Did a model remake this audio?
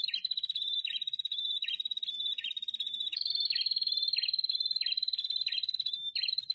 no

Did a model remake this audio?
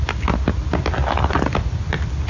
no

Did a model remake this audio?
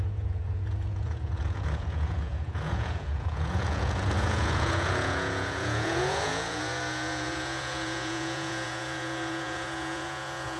yes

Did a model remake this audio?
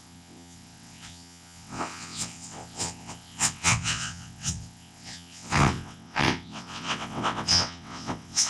yes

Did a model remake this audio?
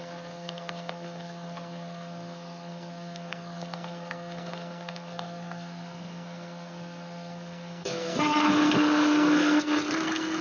yes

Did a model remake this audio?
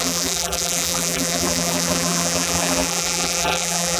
yes